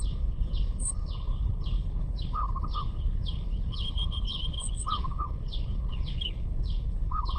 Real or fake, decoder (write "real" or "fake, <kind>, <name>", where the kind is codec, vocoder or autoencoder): fake, codec, HILCodec